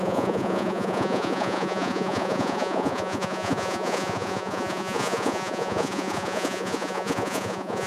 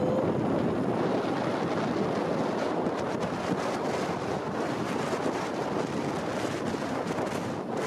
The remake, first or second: first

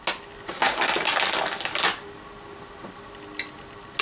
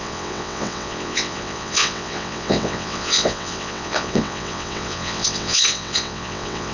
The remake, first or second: second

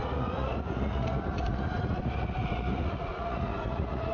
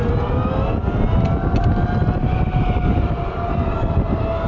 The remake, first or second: first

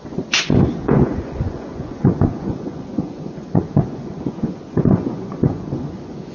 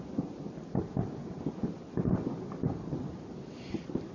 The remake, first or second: first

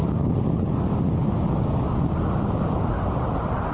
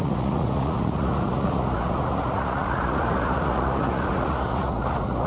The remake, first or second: second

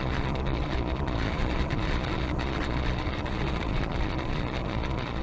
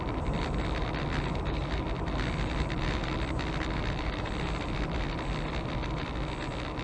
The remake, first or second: first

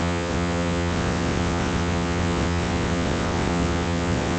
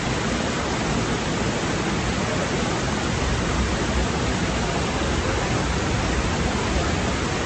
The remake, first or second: first